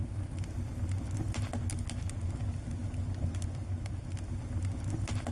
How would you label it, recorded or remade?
recorded